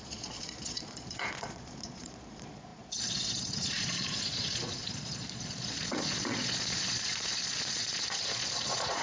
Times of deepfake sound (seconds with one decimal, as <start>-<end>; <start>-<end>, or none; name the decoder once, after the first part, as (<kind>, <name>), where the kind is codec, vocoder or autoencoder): 0.0-9.0 (vocoder, Vocos)